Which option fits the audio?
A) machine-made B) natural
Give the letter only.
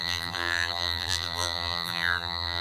A